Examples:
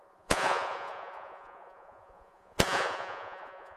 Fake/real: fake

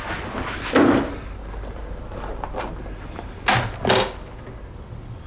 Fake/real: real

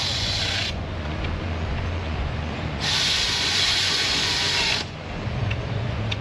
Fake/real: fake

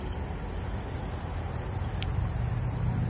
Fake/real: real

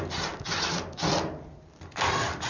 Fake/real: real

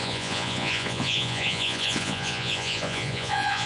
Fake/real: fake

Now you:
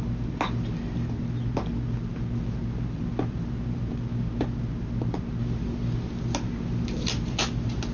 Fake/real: real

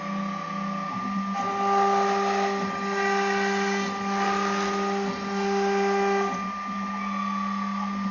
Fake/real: real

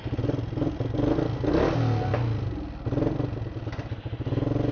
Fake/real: real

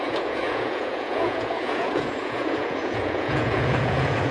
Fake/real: fake